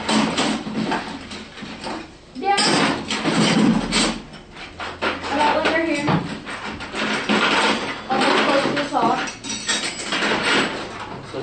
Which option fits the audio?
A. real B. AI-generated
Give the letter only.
A